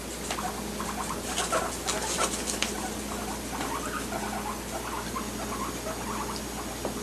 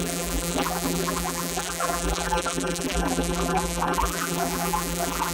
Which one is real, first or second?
first